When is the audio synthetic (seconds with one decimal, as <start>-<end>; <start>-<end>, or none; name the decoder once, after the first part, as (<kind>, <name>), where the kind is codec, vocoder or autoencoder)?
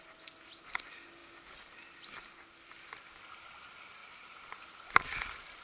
4.0-5.6 (vocoder, BigVGAN v2)